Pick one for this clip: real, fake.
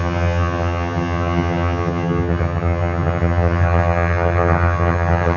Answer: fake